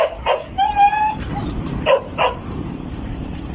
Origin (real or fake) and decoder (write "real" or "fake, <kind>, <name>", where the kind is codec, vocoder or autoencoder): fake, vocoder, BigVGAN v2